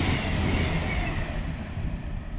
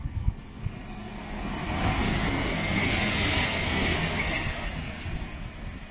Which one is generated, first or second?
second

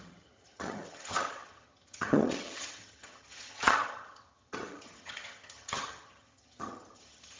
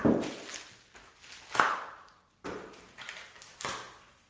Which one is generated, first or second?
first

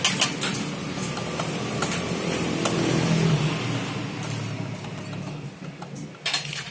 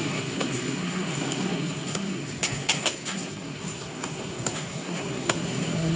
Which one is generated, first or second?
second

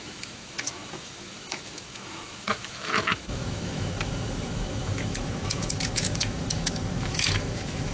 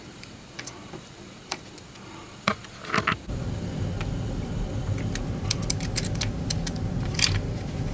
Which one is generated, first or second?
first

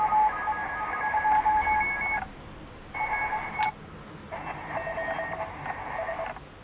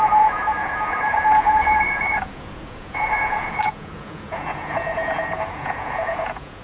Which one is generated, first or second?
second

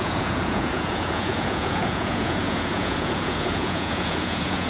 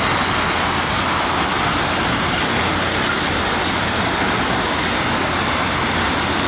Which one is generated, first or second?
first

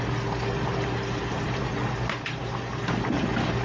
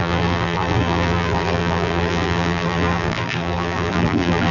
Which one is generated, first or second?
second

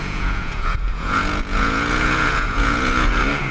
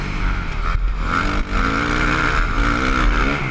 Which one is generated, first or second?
first